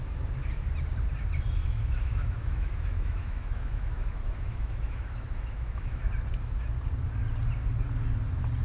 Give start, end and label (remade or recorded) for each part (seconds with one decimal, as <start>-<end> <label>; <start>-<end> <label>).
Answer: 0.0-1.6 recorded; 1.6-6.0 remade; 6.0-8.6 recorded